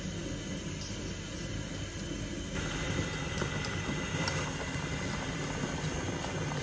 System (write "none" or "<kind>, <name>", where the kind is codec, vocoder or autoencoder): none